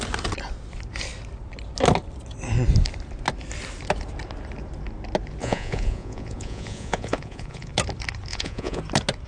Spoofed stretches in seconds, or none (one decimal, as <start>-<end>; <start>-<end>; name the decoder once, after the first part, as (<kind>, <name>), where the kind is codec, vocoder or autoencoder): 5.4-7.7 (vocoder, Vocos); 8.3-8.8